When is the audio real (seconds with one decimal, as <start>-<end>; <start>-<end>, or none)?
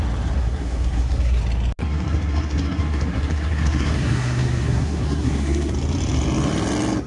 0.0-0.4; 1.4-1.8; 5.7-7.1